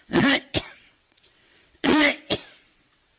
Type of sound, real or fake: fake